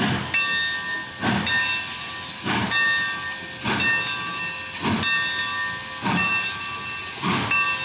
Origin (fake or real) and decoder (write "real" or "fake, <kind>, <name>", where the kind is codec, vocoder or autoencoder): real